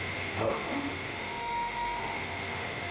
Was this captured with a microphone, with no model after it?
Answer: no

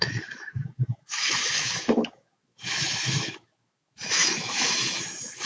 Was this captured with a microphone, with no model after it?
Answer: no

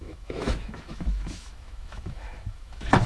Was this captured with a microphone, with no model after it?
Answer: no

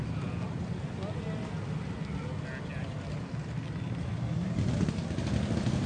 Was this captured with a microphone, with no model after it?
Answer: yes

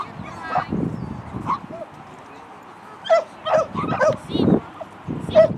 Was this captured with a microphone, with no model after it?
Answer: yes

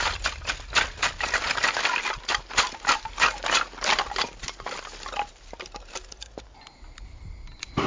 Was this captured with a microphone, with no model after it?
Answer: yes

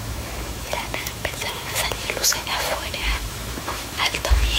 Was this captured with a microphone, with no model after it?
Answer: no